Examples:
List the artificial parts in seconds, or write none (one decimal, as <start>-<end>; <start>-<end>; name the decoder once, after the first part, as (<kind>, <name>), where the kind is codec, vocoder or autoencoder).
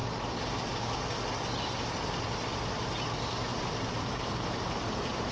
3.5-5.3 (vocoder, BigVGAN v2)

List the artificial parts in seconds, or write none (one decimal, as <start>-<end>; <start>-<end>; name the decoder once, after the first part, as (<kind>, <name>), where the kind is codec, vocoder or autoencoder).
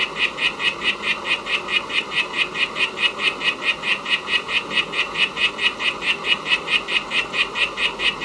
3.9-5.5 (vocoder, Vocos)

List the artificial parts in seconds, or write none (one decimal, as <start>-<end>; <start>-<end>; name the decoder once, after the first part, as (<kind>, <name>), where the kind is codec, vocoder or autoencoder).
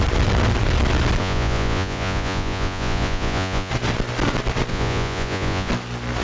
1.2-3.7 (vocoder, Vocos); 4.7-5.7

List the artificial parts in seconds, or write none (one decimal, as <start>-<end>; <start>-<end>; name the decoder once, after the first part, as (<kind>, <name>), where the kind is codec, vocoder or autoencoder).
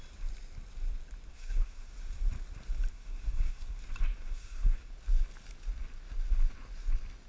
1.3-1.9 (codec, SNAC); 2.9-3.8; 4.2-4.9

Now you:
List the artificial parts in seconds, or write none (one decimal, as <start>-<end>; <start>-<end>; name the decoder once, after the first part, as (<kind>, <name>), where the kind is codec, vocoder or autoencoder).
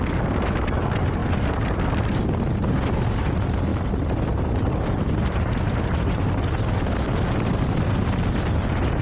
none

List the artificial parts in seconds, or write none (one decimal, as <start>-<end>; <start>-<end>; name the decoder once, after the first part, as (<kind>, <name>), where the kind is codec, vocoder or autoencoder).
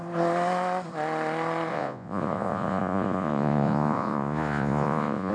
1.7-5.3 (vocoder, Vocos)